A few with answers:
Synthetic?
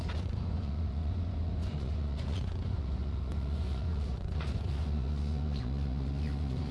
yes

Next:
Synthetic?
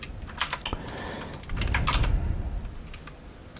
no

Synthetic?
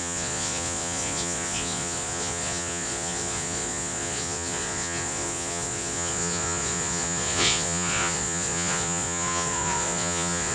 yes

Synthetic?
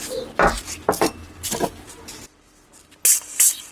no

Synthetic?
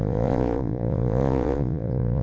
yes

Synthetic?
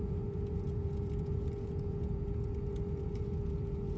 yes